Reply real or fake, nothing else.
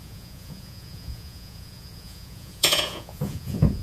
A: fake